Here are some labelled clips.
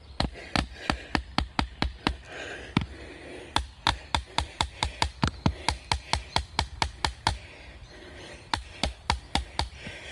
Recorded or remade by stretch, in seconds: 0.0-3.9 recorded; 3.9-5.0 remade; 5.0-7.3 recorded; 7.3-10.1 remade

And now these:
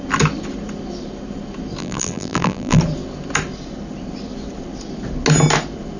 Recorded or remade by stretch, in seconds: 0.0-1.8 recorded; 1.8-2.8 remade; 2.8-6.0 recorded

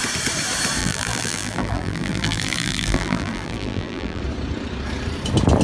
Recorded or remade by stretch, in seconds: 0.0-0.8 recorded; 0.8-4.2 remade; 4.2-5.6 recorded

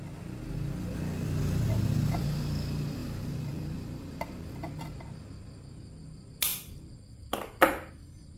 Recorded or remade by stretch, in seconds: 0.0-3.0 recorded; 3.0-4.8 remade; 4.8-6.5 recorded; 6.5-7.9 remade; 7.9-8.4 recorded

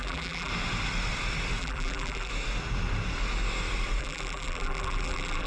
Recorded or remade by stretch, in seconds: 0.0-0.5 remade; 0.5-1.6 recorded; 1.6-2.3 remade; 2.3-4.0 recorded; 4.0-5.5 remade

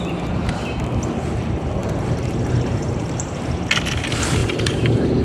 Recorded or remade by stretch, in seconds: 0.0-1.8 recorded; 1.8-3.4 remade; 3.4-4.4 recorded; 4.4-5.2 remade

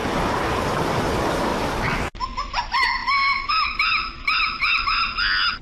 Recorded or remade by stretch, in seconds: 0.0-1.5 recorded; 1.5-2.0 remade; 2.0-5.6 recorded